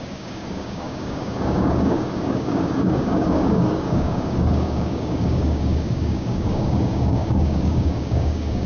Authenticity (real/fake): fake